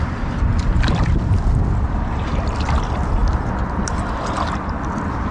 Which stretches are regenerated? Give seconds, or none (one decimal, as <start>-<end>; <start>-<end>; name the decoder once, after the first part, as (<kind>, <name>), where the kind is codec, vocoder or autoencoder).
none